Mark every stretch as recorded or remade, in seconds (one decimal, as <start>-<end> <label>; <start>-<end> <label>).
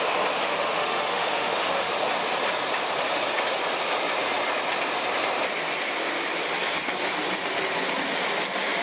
0.0-0.4 recorded; 0.4-1.9 remade; 1.9-8.8 recorded